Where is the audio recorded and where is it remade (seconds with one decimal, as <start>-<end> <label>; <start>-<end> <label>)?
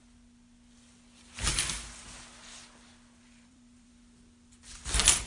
0.0-3.2 recorded; 3.2-3.9 remade; 3.9-5.3 recorded